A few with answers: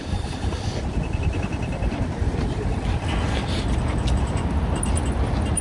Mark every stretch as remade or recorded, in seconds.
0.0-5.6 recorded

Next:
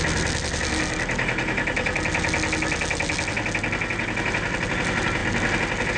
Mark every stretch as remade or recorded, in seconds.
0.0-6.0 recorded